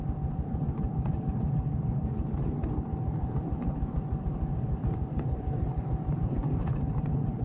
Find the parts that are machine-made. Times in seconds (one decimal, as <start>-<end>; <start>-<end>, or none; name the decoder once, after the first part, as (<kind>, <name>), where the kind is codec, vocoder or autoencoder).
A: none